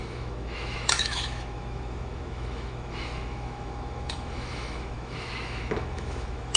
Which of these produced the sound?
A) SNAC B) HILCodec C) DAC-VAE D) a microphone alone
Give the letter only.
C